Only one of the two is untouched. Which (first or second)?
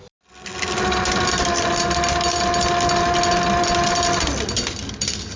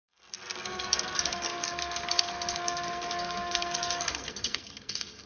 first